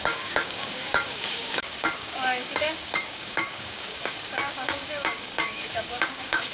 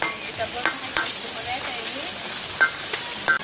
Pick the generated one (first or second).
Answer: first